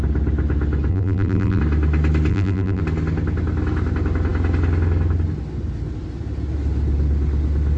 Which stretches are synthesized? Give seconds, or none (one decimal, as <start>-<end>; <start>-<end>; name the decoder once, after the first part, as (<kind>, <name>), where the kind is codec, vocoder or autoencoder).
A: 0.9-1.6 (vocoder, BigVGAN v2); 2.3-2.8